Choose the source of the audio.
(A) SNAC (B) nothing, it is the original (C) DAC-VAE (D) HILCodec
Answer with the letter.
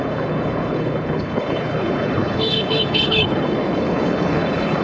D